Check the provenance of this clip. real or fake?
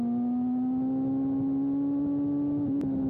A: real